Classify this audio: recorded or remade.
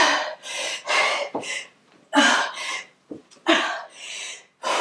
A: remade